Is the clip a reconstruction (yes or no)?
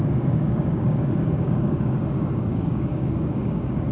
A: yes